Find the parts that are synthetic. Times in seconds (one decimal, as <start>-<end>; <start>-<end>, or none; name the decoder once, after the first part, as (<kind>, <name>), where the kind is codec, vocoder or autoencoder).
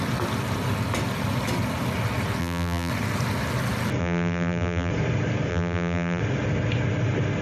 2.4-2.9 (vocoder, BigVGAN v2); 4.0-4.9; 5.5-6.2